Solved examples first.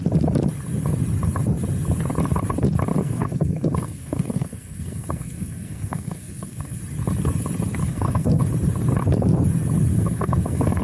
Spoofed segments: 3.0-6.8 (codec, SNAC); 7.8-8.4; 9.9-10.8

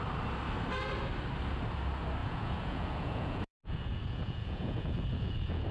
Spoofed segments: 2.2-5.7 (vocoder, Vocos)

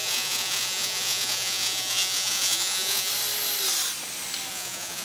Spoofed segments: 0.0-3.1 (vocoder, Vocos); 4.5-5.0

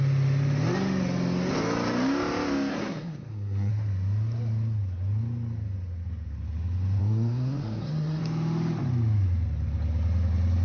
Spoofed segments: 2.7-3.7 (codec, SNAC); 7.0-8.2